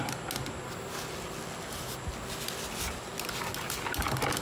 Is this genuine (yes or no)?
yes